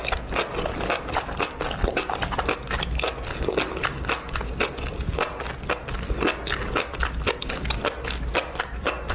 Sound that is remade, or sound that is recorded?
recorded